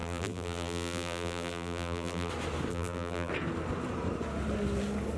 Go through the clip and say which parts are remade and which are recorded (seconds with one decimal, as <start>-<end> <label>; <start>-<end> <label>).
0.0-2.3 remade; 2.3-2.7 recorded; 2.7-3.3 remade; 3.3-5.2 recorded